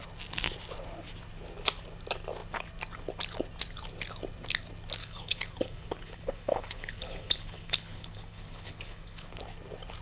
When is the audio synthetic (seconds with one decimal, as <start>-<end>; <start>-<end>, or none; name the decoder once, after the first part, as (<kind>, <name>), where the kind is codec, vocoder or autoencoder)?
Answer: 5.0-9.3 (codec, HILCodec)